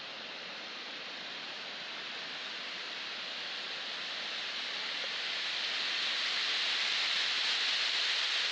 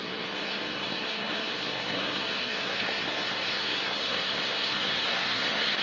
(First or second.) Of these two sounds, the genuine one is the first